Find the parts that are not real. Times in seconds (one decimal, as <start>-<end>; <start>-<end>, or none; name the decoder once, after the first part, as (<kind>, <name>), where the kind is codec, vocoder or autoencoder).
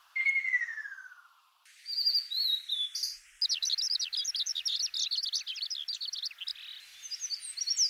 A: none